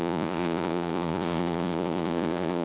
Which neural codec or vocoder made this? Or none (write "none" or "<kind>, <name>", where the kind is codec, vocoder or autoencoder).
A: vocoder, Vocos